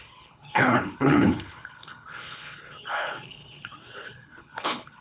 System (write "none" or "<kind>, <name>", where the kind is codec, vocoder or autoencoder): codec, HILCodec